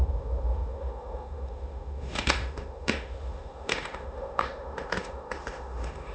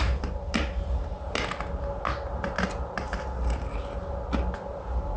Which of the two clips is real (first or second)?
second